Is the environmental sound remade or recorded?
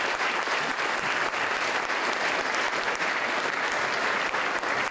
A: recorded